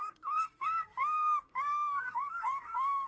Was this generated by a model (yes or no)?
yes